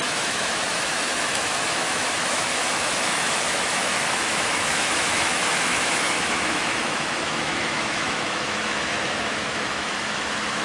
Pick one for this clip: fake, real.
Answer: fake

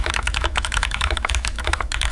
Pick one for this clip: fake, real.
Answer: fake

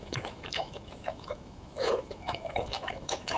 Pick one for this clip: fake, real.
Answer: fake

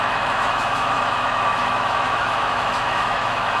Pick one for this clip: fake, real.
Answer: fake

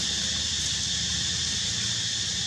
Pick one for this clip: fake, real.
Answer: real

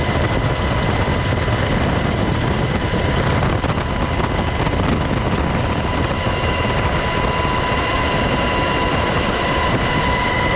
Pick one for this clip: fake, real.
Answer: real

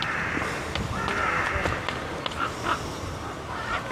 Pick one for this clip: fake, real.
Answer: real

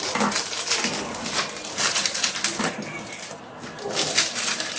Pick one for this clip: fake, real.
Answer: real